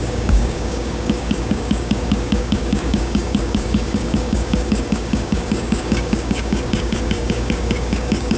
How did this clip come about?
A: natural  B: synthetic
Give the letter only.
B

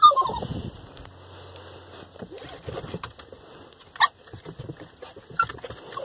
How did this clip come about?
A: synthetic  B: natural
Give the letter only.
B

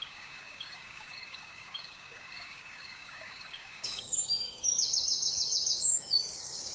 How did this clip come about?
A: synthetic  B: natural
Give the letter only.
A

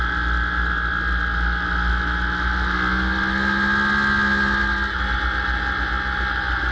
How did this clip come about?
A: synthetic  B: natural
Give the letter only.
B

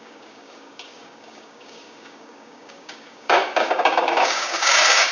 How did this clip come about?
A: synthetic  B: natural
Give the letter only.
A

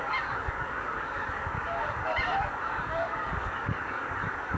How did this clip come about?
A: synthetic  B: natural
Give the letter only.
A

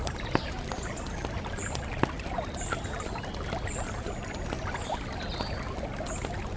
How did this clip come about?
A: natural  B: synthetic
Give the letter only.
A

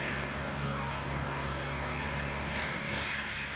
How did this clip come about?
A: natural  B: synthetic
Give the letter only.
B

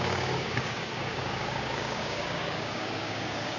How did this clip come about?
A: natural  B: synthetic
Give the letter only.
B